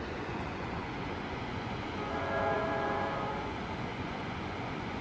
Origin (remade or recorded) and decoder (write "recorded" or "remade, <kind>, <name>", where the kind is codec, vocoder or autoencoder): remade, vocoder, Vocos